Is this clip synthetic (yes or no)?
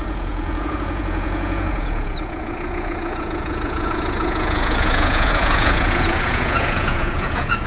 yes